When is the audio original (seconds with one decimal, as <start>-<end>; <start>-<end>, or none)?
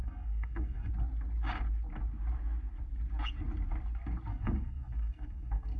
0.9-4.3